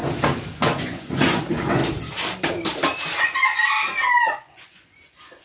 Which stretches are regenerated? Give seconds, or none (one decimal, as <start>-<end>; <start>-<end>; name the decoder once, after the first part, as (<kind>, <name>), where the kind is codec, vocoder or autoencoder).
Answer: 0.5-1.8 (vocoder, Vocos); 3.2-3.6; 4.2-5.4